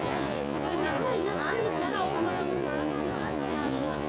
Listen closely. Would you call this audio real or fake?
fake